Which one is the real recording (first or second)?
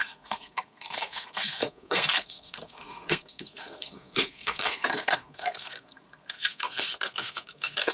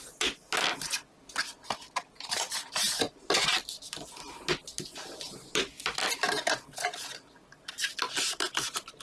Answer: second